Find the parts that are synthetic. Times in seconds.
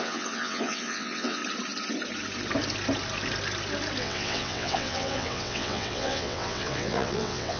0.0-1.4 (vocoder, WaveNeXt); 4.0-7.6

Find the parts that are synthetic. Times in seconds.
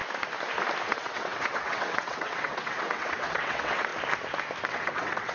0.8-3.9 (vocoder, WaveNeXt); 4.7-5.3